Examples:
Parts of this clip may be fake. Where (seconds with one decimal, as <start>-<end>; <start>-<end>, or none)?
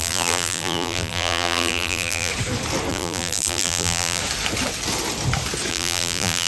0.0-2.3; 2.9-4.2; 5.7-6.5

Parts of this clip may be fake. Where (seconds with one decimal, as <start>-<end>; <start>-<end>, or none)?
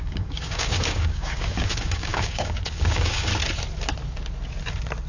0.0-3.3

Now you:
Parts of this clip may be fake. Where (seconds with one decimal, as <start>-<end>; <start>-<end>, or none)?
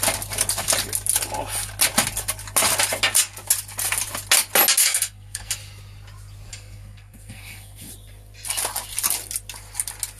4.8-5.5; 6.5-7.9